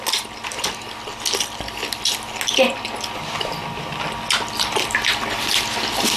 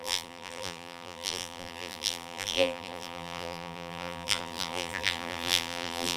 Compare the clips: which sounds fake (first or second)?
second